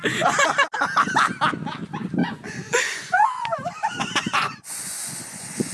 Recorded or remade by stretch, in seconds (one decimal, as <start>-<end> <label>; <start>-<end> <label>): 0.0-2.2 recorded; 2.2-5.7 remade